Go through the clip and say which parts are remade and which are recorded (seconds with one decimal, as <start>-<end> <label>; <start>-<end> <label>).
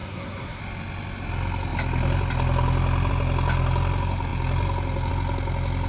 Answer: 0.0-0.6 remade; 0.6-5.9 recorded